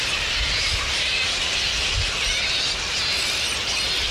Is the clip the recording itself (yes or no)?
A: yes